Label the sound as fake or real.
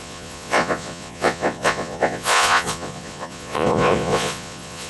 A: fake